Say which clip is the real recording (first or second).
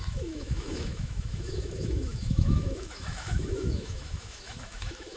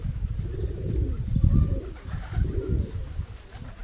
second